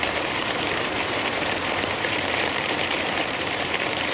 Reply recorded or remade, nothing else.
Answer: remade